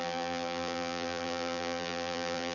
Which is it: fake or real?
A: fake